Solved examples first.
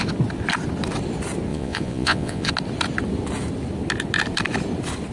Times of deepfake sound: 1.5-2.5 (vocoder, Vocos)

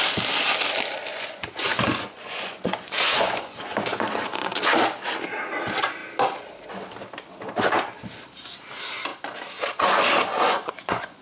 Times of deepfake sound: 1.1-4.6 (vocoder, Vocos); 10.3-11.2

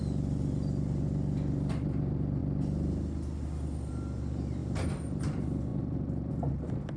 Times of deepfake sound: none

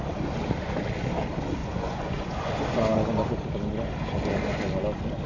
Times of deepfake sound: 1.6-2.5 (vocoder, Vocos)